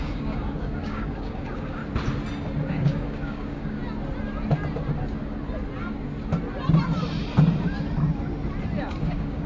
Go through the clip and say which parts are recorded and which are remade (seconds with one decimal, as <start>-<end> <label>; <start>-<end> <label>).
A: 0.0-1.8 remade; 1.8-2.7 recorded; 2.7-3.8 remade; 3.8-9.0 recorded; 9.0-9.5 remade